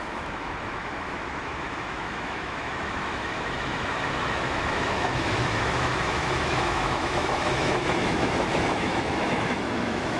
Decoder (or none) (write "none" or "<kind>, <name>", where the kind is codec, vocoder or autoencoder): autoencoder, DAC-VAE